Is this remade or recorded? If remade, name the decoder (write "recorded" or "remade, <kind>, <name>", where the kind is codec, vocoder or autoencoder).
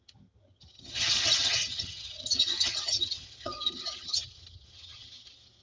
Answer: remade, vocoder, HiFi-GAN